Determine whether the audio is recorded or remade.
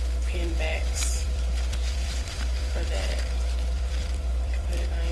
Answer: remade